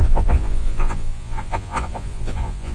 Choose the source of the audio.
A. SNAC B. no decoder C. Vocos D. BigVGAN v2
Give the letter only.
C